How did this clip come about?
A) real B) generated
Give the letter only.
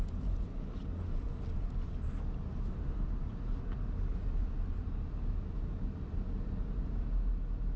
A